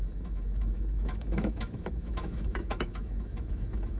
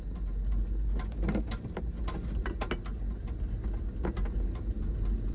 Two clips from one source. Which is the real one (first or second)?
second